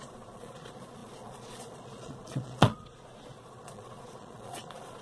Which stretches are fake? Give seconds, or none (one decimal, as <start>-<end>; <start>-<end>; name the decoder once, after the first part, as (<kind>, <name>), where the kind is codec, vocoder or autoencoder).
0.0-5.0 (vocoder, Vocos)

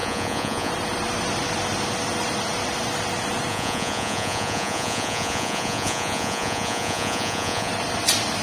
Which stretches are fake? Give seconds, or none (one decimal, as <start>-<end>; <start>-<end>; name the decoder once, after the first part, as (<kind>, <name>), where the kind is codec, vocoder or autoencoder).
0.0-0.7 (vocoder, Vocos); 3.5-7.7

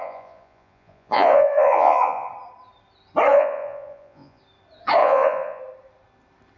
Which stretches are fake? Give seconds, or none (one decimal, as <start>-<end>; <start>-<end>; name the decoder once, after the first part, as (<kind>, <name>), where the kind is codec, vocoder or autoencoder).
0.0-2.3 (vocoder, Vocos); 3.3-4.4; 5.0-5.6

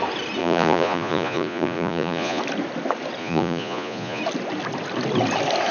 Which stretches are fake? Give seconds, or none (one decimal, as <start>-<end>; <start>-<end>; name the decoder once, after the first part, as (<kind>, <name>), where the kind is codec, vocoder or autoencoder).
0.4-2.4 (vocoder, Vocos); 3.2-4.2

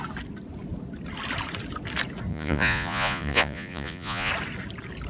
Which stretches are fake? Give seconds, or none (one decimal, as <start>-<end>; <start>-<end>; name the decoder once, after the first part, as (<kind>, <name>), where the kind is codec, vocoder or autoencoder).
2.3-4.3 (vocoder, Vocos)